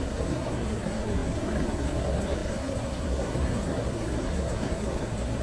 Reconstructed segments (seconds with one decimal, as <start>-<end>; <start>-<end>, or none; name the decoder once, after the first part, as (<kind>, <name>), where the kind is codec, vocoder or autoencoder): 0.0-5.4 (codec, SNAC)